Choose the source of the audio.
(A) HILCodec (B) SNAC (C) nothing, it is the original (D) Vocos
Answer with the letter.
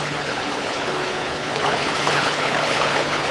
A